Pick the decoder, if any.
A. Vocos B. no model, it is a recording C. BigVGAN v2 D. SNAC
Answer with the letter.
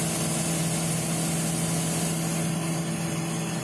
B